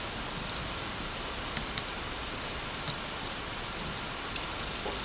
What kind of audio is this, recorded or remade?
recorded